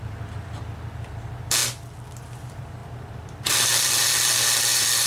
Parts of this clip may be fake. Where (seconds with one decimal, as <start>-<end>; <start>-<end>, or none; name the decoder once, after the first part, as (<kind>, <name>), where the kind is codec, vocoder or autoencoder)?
0.0-1.6 (vocoder, BigVGAN v2); 2.4-5.1